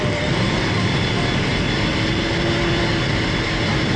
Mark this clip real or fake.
fake